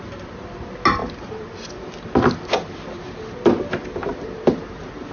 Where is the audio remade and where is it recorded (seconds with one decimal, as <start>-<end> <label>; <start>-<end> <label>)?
0.0-1.0 recorded; 1.0-2.1 remade; 2.1-4.0 recorded; 4.0-5.1 remade

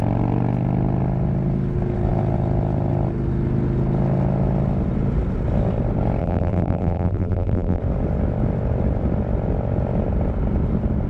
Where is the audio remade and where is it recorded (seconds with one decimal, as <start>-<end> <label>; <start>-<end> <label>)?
0.0-6.2 recorded; 6.2-7.8 remade; 7.8-11.1 recorded

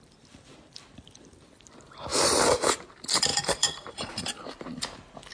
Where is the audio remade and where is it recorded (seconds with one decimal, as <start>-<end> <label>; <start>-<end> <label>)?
0.0-3.3 recorded; 3.3-4.6 remade; 4.6-5.3 recorded